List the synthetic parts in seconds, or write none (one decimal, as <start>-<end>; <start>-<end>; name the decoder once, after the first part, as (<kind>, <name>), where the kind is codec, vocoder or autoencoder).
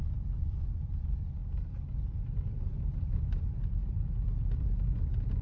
none